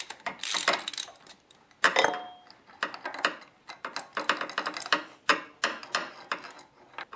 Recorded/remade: recorded